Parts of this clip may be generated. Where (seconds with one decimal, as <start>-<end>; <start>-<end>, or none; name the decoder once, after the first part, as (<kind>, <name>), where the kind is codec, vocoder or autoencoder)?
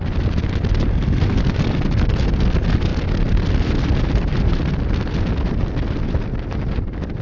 0.9-1.4 (codec, SNAC)